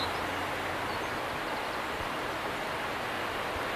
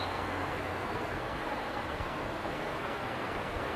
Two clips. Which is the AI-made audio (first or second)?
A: second